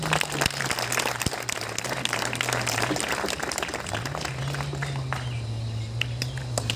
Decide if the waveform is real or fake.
real